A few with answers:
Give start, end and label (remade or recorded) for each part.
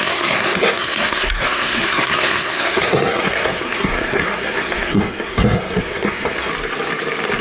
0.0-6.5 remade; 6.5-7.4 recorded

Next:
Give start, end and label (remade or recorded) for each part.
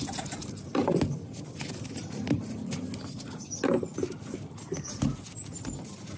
0.0-6.2 recorded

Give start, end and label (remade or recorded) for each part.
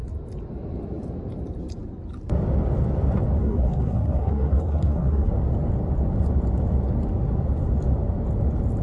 0.0-3.4 recorded; 3.4-5.3 remade; 5.3-8.8 recorded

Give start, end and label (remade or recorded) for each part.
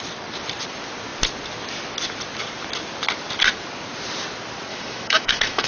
0.0-4.7 recorded; 4.7-5.7 remade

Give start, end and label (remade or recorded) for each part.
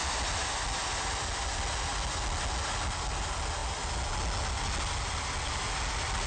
0.0-6.3 recorded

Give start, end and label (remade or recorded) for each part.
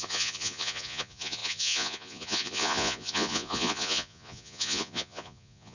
0.0-5.7 remade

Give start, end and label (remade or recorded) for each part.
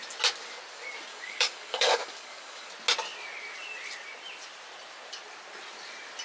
0.0-1.1 recorded; 1.1-2.7 remade; 2.7-6.2 recorded